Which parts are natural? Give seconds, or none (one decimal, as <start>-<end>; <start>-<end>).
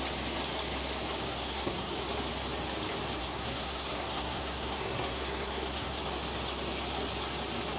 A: 0.0-1.3; 1.9-3.2; 6.0-7.8